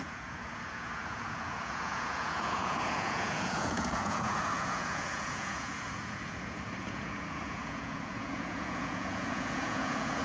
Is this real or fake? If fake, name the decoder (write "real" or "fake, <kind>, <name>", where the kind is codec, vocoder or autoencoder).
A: fake, vocoder, Vocos